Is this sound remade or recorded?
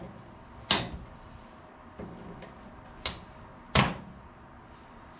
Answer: recorded